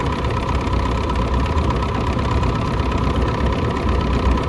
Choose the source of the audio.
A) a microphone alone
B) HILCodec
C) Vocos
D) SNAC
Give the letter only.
A